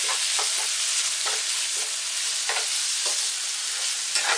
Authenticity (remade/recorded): recorded